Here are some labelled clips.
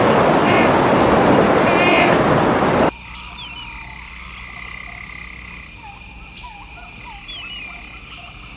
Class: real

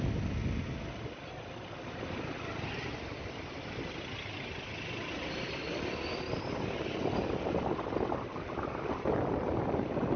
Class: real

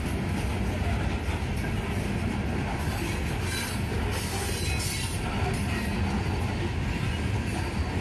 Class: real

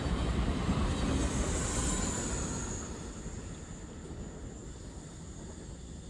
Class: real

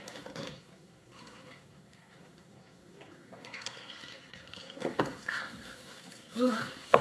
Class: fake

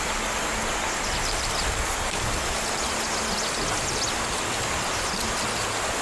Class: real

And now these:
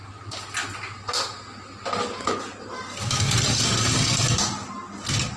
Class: real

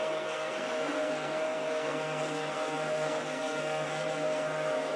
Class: fake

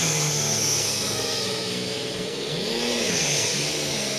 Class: fake